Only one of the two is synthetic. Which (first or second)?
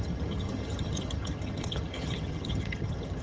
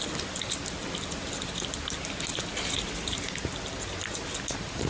first